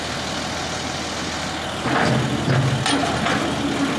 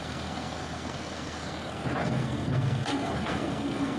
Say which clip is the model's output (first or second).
second